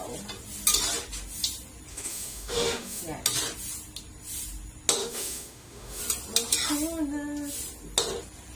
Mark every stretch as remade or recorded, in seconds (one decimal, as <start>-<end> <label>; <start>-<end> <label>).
0.0-1.9 recorded; 1.9-3.0 remade; 3.0-5.0 recorded; 5.0-6.0 remade; 6.0-8.5 recorded